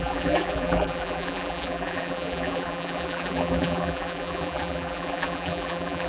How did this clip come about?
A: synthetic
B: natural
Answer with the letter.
A